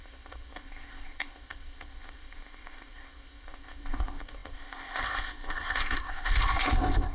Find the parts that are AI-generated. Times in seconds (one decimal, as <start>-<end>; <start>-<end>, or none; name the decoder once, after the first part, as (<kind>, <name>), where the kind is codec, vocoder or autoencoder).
0.0-7.1 (codec, ZipCodec)